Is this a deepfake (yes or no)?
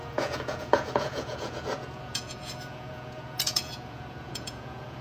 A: yes